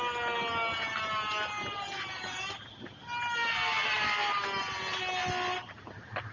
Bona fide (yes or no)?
yes